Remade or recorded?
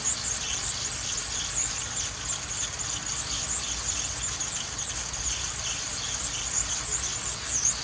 recorded